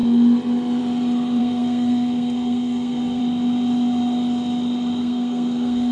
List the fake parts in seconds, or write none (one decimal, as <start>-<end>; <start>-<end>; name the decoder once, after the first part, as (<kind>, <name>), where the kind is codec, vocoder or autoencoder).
1.4-3.2 (codec, SNAC); 5.0-5.9